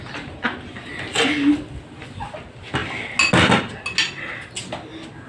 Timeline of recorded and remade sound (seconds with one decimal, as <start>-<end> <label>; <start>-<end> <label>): 0.0-5.3 recorded